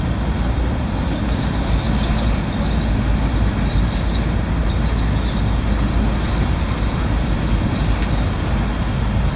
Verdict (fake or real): real